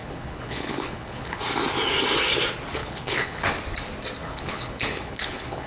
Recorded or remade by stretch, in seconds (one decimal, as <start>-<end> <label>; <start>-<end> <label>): 0.0-1.4 remade; 1.4-2.8 recorded; 2.8-3.5 remade; 3.5-4.2 recorded; 4.2-5.7 remade